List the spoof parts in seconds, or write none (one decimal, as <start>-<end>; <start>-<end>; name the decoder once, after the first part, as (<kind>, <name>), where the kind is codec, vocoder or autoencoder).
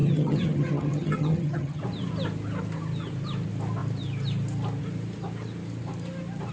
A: 0.0-1.8 (vocoder, HiFi-GAN)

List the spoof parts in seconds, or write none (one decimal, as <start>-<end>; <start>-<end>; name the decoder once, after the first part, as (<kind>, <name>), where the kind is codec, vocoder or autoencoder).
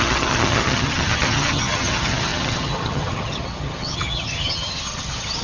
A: 0.0-5.4 (vocoder, HiFi-GAN)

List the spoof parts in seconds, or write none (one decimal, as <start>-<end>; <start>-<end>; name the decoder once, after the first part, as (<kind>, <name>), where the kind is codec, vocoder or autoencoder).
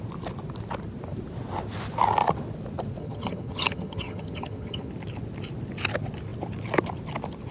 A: 3.0-4.9 (vocoder, HiFi-GAN)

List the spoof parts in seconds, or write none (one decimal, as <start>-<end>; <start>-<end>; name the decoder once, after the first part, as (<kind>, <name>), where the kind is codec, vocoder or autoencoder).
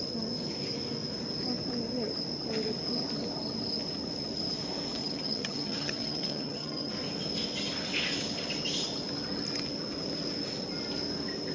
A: 5.0-6.9 (vocoder, HiFi-GAN)